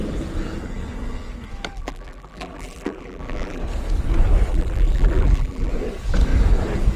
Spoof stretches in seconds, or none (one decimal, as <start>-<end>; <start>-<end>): 1.7-3.6; 4.5-5.7